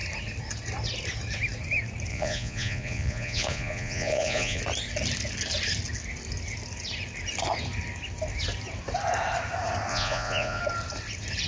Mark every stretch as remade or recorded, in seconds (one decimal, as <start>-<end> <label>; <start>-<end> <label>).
0.0-2.1 recorded; 2.1-4.6 remade; 4.6-9.9 recorded; 9.9-10.6 remade; 10.6-11.5 recorded